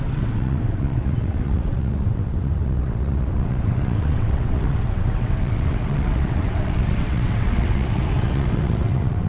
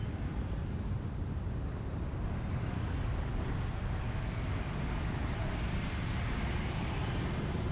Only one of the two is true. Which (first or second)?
second